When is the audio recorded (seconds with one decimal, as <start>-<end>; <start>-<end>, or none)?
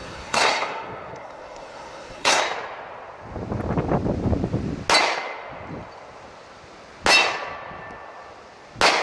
2.4-9.0